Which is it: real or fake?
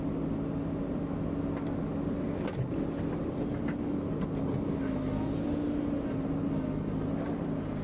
real